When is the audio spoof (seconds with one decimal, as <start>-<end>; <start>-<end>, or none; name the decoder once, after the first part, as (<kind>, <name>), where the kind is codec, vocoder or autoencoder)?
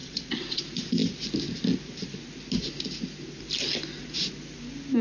0.0-0.6 (vocoder, WaveNeXt)